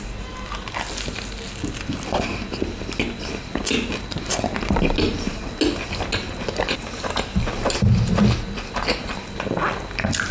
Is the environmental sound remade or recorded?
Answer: recorded